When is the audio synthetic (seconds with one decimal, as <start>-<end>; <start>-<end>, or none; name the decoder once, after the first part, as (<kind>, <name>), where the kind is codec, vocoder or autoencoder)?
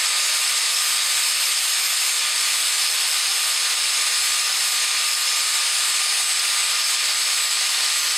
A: none